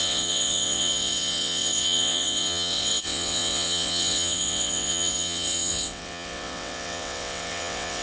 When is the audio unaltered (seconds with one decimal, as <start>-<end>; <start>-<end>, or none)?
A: none